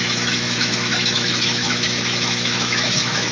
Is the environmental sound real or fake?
fake